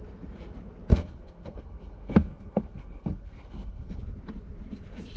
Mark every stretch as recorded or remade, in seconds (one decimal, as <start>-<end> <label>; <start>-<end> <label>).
0.0-0.9 recorded; 0.9-4.0 remade; 4.0-5.2 recorded